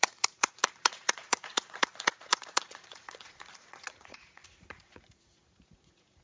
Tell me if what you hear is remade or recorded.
remade